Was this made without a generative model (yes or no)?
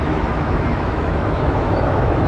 no